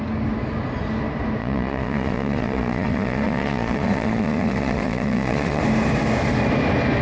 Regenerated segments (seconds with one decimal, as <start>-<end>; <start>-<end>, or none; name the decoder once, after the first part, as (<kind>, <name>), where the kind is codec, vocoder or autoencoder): 1.4-5.6 (vocoder, Vocos)